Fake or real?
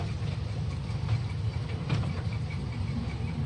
real